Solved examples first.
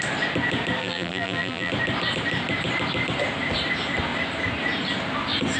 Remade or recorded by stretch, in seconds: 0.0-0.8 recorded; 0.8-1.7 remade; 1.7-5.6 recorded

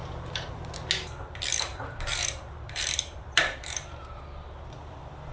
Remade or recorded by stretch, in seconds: 0.0-0.5 remade; 0.5-1.7 recorded; 1.7-4.2 remade; 4.2-5.3 recorded